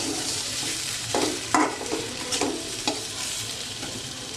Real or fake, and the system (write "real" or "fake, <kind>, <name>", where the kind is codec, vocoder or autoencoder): fake, vocoder, BigVGAN v2